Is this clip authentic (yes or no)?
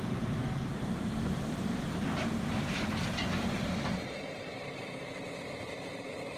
no